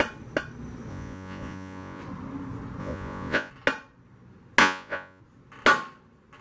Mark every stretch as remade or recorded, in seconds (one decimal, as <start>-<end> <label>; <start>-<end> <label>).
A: 0.0-0.9 recorded; 0.9-2.0 remade; 2.0-2.8 recorded; 2.8-3.5 remade; 3.5-4.6 recorded; 4.6-5.2 remade; 5.2-6.4 recorded